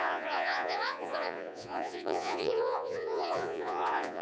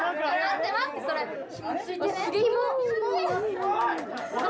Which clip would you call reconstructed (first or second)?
first